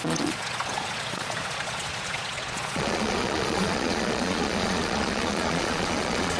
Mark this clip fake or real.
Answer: fake